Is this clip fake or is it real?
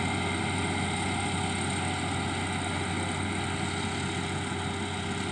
real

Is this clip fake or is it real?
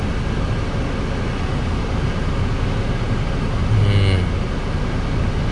real